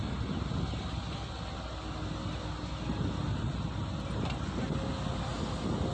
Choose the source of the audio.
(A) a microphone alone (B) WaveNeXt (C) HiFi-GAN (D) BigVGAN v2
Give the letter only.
A